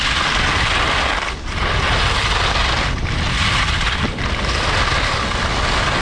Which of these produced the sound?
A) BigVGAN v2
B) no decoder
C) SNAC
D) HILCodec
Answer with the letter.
B